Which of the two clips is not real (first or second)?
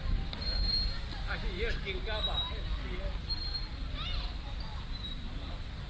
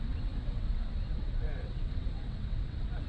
second